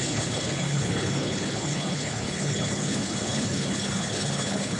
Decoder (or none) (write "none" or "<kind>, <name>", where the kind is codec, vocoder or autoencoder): codec, HILCodec